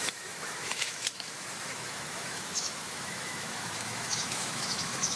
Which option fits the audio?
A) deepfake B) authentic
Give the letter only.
A